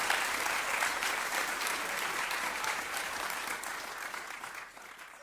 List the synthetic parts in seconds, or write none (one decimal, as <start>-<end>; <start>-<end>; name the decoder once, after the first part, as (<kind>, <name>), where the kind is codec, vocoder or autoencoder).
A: 0.9-3.4 (vocoder, BigVGAN v2)